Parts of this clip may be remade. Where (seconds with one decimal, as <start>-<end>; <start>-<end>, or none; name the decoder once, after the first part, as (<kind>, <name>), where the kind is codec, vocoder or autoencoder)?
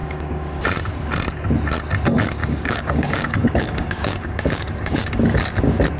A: 0.0-0.6 (codec, DAC); 2.4-5.1